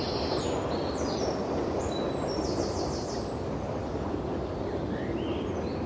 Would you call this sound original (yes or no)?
yes